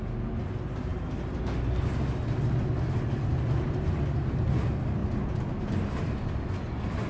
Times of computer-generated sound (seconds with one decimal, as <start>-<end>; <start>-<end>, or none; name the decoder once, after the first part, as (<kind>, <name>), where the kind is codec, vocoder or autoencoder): none